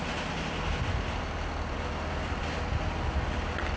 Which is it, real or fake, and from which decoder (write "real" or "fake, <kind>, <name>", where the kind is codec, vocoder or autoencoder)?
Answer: real